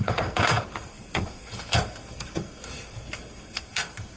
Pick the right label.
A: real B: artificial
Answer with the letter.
B